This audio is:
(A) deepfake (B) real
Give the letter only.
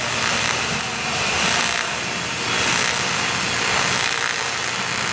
B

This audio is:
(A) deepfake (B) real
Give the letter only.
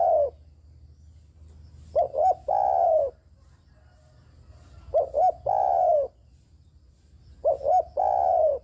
B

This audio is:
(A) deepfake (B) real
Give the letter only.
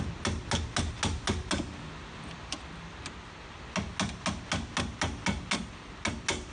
B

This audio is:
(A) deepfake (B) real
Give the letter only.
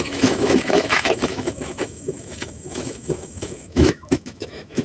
A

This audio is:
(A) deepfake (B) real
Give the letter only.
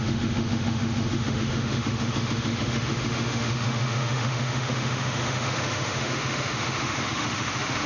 A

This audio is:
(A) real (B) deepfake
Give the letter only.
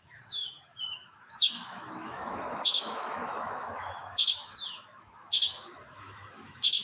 B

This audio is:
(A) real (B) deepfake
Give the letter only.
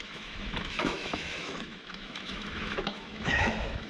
B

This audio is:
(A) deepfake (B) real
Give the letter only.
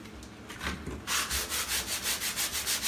B